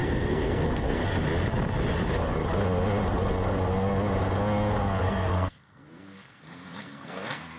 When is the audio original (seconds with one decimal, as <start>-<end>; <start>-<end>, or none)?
1.0-5.0